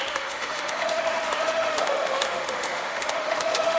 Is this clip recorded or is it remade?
remade